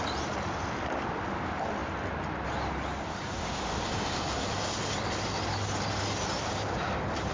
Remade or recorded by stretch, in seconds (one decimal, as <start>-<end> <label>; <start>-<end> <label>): 0.0-7.3 recorded